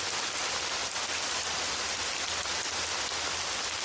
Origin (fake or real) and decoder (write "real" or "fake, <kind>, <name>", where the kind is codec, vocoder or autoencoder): real